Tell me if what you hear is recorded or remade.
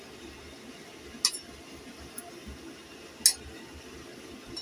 recorded